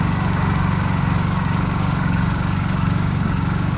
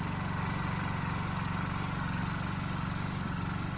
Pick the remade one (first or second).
first